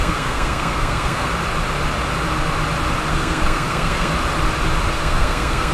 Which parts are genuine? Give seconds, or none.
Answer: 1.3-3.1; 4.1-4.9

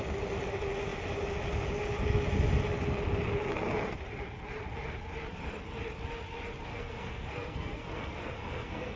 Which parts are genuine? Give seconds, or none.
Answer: 0.0-6.7

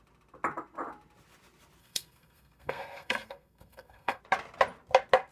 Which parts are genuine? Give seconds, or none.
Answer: 0.0-1.8; 4.2-5.3

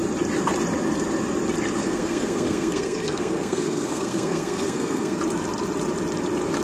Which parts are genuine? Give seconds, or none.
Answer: 0.0-1.8; 5.2-6.6

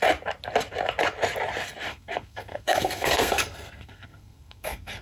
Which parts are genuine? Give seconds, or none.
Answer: 0.0-1.9